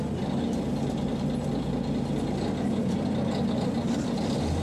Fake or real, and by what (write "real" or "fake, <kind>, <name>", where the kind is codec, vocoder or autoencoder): real